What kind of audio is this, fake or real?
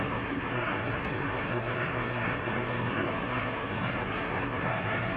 fake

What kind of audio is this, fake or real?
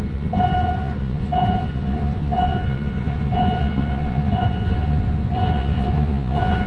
fake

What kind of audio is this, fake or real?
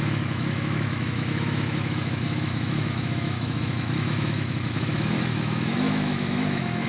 fake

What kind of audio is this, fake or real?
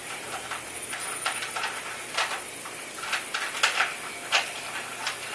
real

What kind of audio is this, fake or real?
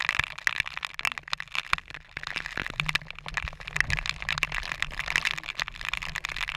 real